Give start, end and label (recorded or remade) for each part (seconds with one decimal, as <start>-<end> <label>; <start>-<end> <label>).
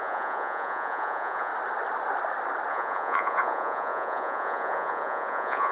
0.0-1.5 remade; 1.5-2.7 recorded; 2.7-5.7 remade